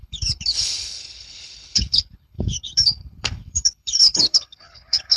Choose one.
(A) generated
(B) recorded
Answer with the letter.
A